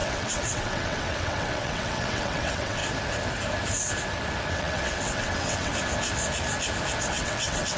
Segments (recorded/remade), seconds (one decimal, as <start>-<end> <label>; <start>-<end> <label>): 0.0-2.8 remade; 2.8-4.5 recorded; 4.5-5.7 remade; 5.7-7.1 recorded; 7.1-7.8 remade